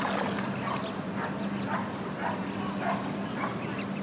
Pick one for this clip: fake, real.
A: real